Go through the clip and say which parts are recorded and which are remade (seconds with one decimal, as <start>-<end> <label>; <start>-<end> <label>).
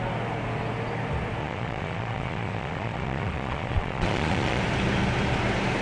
0.0-1.4 recorded; 1.4-4.6 remade; 4.6-5.8 recorded